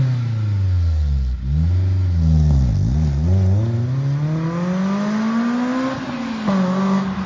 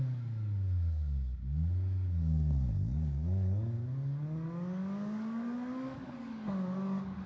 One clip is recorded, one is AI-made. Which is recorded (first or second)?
first